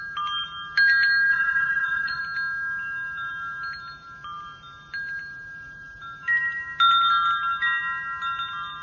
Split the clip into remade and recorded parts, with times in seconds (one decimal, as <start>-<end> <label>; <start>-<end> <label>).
0.0-1.3 recorded; 1.3-2.2 remade; 2.2-8.8 recorded